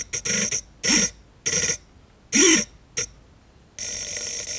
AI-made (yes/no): no